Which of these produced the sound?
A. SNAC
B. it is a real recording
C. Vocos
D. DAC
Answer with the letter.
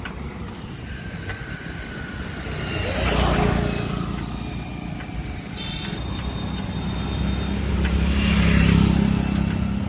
B